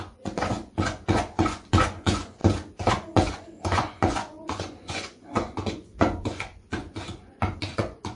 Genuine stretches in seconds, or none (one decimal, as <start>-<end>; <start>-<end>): 2.4-2.9